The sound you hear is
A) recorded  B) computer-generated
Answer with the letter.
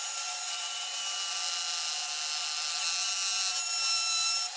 A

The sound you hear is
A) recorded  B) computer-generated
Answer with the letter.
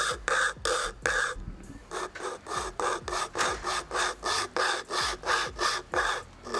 A